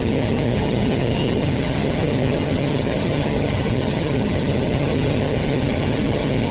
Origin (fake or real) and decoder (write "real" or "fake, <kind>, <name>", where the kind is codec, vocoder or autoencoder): fake, vocoder, HiFi-GAN